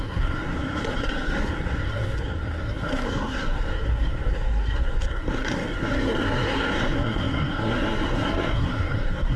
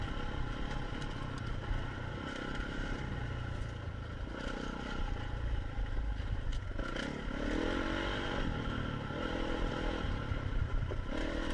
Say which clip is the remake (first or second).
first